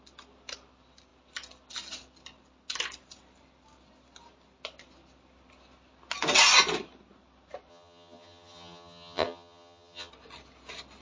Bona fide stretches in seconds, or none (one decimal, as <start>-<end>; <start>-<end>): 0.0-7.7; 10.1-11.0